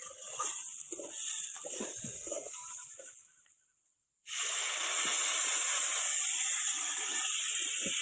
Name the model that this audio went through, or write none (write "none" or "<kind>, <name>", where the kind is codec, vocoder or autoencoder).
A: none